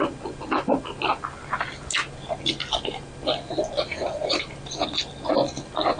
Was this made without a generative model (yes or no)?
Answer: yes